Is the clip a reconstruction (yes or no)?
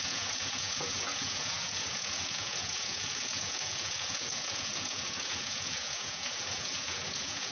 yes